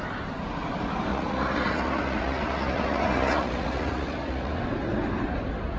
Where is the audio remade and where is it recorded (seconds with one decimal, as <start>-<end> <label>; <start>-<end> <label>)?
0.0-1.1 recorded; 1.1-4.6 remade; 4.6-5.8 recorded